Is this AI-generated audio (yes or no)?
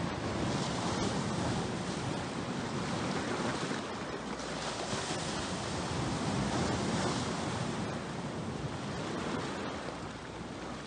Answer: no